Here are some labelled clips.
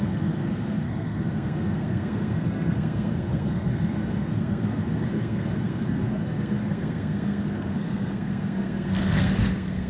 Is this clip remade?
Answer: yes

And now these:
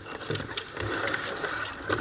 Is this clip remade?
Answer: no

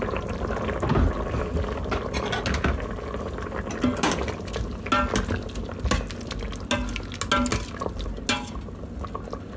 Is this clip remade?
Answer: no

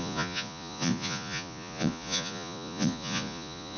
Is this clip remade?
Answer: yes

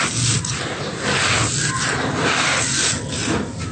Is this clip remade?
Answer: no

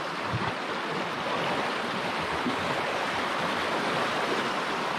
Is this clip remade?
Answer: yes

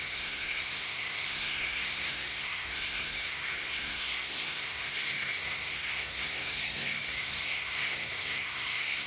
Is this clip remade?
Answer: yes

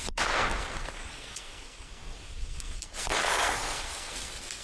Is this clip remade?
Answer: yes